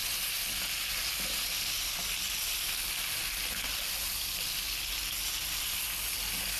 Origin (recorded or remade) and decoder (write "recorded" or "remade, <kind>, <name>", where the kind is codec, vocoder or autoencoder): recorded